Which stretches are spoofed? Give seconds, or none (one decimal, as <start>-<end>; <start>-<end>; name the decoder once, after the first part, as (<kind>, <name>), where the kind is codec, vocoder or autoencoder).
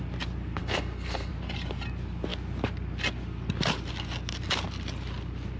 0.6-1.3 (codec, SNAC)